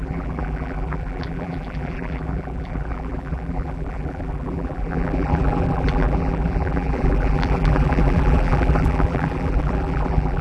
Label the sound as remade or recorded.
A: remade